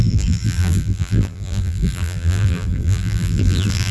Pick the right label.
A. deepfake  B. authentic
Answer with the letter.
A